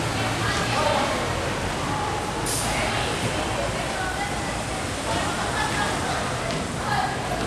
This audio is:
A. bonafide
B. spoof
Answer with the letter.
B